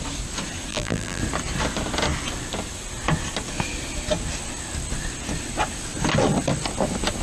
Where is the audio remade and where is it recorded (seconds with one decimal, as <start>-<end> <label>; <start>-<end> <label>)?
0.0-0.7 recorded; 0.7-1.2 remade; 1.2-7.2 recorded